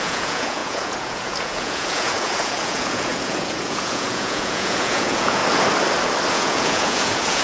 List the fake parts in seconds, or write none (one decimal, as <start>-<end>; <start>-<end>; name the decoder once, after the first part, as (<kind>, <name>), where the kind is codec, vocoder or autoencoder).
0.0-5.4 (vocoder, Vocos); 6.3-7.4